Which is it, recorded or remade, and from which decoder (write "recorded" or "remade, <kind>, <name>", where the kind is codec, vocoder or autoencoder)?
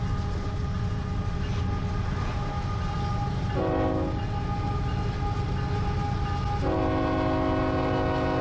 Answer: recorded